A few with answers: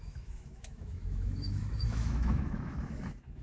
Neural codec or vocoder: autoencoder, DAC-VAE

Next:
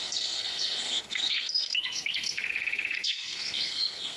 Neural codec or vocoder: codec, SNAC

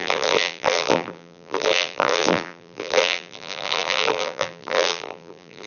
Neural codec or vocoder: vocoder, BigVGAN v2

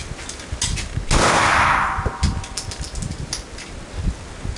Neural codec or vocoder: none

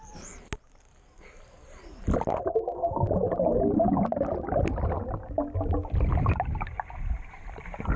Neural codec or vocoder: none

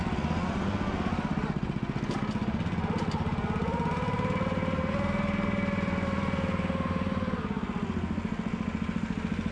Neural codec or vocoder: none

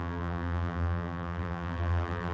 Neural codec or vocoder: vocoder, BigVGAN v2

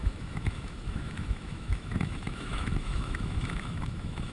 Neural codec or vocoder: autoencoder, DAC-VAE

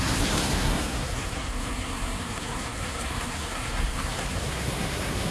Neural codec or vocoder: codec, SNAC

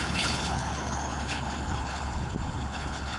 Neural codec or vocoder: codec, HILCodec